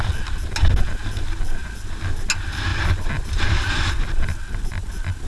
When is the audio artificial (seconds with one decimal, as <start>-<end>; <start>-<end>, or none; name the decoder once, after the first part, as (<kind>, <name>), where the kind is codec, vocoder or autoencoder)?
none